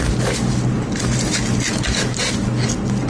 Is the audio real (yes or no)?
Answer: yes